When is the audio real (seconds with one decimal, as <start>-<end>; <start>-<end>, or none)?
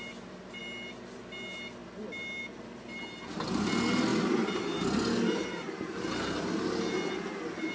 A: 0.0-7.7